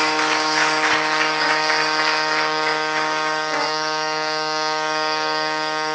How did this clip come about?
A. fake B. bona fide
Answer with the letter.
A